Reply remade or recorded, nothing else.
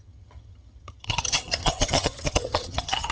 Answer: remade